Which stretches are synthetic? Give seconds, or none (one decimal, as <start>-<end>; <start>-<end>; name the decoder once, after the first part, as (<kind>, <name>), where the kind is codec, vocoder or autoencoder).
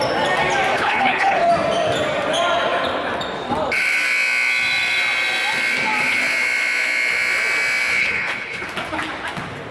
0.7-1.5 (codec, HILCodec); 8.0-8.6